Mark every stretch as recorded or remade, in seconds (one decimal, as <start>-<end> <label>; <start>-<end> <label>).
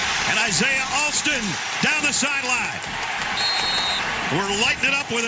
0.0-5.3 recorded